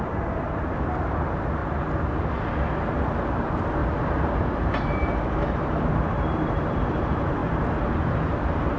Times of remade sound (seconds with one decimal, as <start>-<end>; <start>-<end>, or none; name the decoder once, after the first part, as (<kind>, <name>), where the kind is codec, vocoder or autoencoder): 0.0-1.6 (vocoder, BigVGAN v2); 2.8-3.8; 4.4-8.8